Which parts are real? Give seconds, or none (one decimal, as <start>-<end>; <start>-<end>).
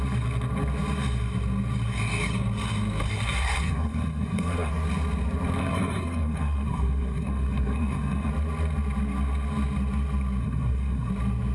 0.0-3.1; 4.7-5.6; 8.3-10.4; 11.1-11.5